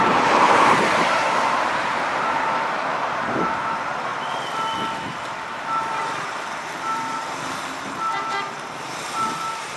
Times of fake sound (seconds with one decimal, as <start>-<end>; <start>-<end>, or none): 0.0-4.1; 5.3-9.8